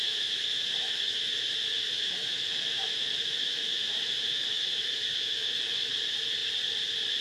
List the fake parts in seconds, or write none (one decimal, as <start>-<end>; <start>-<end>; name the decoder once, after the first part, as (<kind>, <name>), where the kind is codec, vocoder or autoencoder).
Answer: 0.0-1.3 (autoencoder, DAC-VAE); 1.8-5.9